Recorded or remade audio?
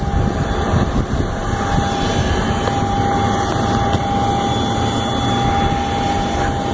recorded